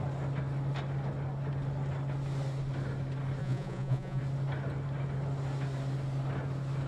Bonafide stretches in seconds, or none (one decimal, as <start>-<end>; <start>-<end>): 0.0-3.4; 4.2-6.9